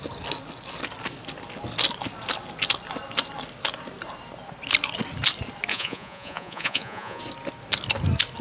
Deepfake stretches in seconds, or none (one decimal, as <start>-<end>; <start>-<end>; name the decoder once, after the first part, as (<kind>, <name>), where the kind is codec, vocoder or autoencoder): 5.7-7.2 (vocoder, Vocos)